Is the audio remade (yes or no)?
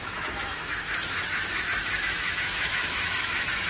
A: yes